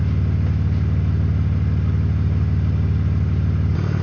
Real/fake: real